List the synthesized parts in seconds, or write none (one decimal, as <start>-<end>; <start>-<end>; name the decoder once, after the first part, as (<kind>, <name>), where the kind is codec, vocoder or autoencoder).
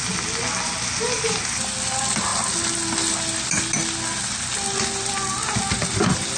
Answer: none